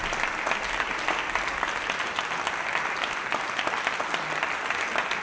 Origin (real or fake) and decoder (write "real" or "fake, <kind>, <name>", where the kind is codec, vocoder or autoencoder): real